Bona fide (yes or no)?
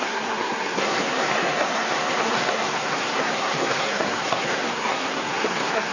no